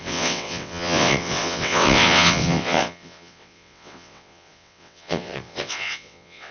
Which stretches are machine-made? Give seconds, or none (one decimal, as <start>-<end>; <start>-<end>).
0.0-6.5